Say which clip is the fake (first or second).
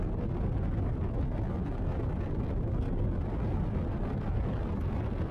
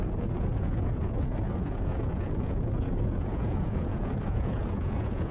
second